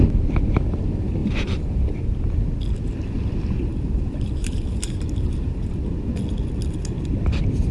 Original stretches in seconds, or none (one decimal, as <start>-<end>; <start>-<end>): 0.0-1.2; 2.3-3.7; 5.6-7.7